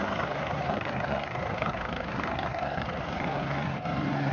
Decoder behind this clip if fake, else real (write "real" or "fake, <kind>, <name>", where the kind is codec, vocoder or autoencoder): fake, codec, SNAC